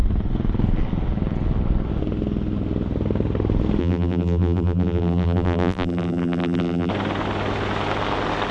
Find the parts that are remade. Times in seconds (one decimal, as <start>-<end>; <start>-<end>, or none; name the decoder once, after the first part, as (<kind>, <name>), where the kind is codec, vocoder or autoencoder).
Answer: 3.8-6.9 (vocoder, BigVGAN v2)